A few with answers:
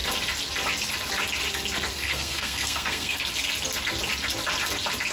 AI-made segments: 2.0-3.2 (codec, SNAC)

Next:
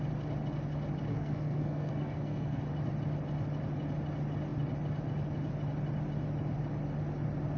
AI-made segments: 1.1-2.6 (codec, SNAC)

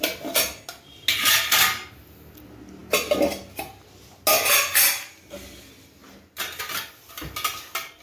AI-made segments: none